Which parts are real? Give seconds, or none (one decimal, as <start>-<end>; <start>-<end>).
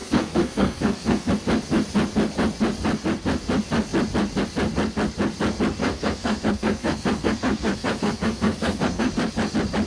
1.3-5.8; 9.1-9.9